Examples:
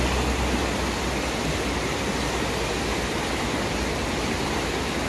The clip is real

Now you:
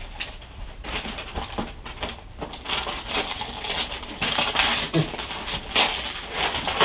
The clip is real